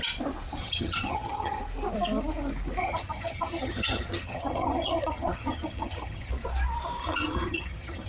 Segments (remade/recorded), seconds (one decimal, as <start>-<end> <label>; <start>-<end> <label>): 0.0-0.6 recorded; 0.6-1.6 remade; 1.6-2.8 recorded; 2.8-6.3 remade; 6.3-7.0 recorded; 7.0-8.1 remade